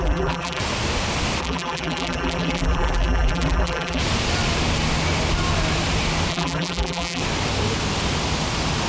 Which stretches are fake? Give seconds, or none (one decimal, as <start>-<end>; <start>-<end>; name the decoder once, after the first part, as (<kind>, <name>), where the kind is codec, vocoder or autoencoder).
0.0-0.6 (vocoder, BigVGAN v2); 1.4-4.0; 6.3-7.2